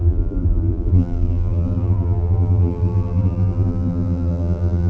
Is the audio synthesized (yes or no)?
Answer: yes